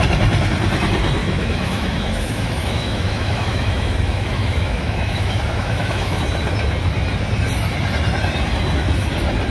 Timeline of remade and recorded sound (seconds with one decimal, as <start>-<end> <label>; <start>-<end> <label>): 0.0-1.2 recorded; 1.2-6.2 remade; 6.2-9.5 recorded